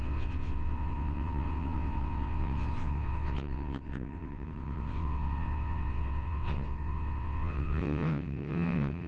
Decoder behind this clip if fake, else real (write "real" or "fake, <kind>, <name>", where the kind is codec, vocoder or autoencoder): fake, vocoder, WaveNeXt